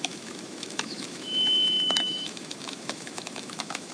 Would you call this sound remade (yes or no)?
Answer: yes